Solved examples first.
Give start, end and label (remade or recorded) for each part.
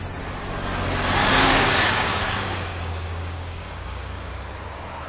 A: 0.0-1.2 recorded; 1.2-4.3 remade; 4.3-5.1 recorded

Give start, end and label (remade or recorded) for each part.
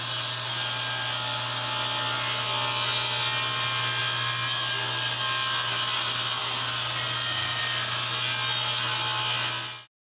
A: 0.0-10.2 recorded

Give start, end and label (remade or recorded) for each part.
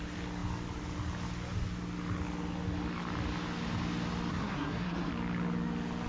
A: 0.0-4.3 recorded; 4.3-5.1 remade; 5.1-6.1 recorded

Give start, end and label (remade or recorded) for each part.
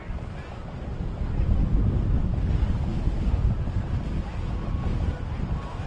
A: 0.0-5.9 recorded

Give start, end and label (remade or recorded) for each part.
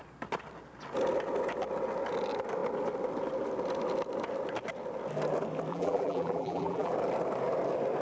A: 0.0-5.7 recorded; 5.7-6.9 remade; 6.9-8.0 recorded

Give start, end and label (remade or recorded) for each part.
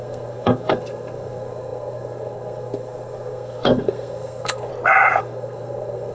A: 0.0-4.7 remade; 4.7-5.2 recorded; 5.2-6.1 remade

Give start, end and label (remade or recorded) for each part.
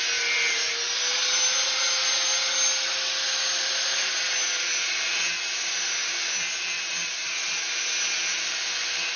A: 0.0-6.9 recorded; 6.9-7.7 remade; 7.7-9.2 recorded